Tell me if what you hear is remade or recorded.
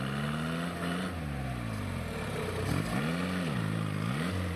recorded